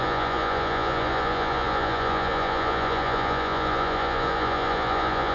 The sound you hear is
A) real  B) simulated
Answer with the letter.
B